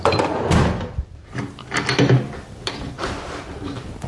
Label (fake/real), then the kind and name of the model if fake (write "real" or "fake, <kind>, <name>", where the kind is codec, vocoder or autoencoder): real